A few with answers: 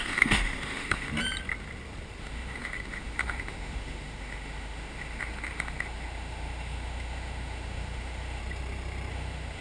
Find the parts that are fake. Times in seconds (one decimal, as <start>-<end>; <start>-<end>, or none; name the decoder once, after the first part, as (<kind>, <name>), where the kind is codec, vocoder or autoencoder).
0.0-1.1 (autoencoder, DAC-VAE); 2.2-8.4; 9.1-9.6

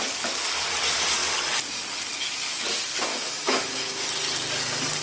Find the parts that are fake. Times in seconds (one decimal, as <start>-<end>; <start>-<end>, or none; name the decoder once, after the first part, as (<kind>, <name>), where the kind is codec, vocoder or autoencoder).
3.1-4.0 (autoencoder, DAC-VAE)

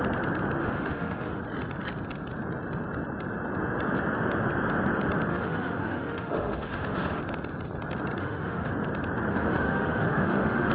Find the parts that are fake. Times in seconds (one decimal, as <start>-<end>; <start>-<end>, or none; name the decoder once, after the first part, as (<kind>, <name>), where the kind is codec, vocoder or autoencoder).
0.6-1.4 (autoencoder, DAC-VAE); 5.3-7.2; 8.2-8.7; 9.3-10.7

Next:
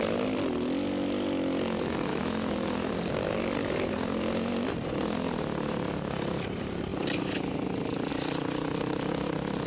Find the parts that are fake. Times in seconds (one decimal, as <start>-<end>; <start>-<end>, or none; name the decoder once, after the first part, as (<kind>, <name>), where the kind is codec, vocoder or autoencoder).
2.1-2.9 (autoencoder, DAC-VAE)